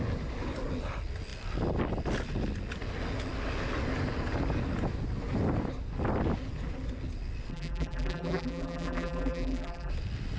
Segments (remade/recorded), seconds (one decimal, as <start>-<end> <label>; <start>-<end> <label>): 0.0-7.5 recorded; 7.5-9.9 remade; 9.9-10.4 recorded